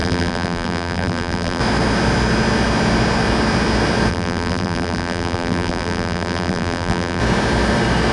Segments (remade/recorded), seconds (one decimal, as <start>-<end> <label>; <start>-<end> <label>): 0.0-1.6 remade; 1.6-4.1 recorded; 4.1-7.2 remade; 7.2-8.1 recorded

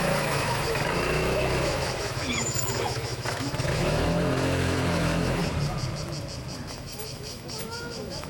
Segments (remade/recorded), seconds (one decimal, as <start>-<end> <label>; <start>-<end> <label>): 0.0-5.4 remade; 5.4-6.7 recorded; 6.7-8.3 remade

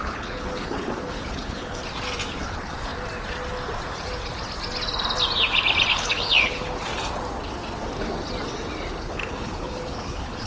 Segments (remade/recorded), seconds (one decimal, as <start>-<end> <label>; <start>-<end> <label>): 0.0-1.8 remade; 1.8-2.3 recorded; 2.3-2.9 remade; 2.9-5.9 recorded; 5.9-6.9 remade; 6.9-9.0 recorded; 9.0-10.5 remade

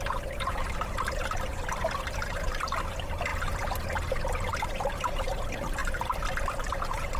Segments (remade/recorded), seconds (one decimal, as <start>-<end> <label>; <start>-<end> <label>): 0.0-1.5 remade; 1.5-2.0 recorded; 2.0-7.2 remade